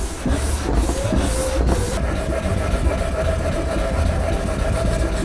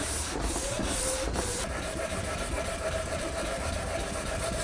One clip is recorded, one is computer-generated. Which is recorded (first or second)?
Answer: first